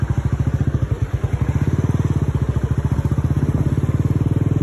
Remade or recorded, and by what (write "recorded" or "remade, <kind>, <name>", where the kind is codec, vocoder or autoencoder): recorded